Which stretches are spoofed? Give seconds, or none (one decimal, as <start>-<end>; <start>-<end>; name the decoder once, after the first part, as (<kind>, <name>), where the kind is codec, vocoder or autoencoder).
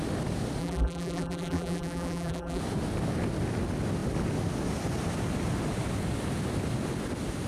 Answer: 0.6-2.6 (vocoder, BigVGAN v2)